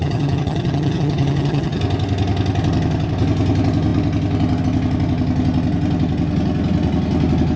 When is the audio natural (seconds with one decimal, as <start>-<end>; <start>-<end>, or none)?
1.8-7.6